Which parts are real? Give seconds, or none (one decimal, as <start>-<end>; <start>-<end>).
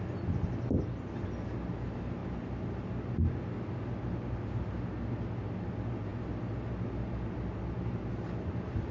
0.0-8.9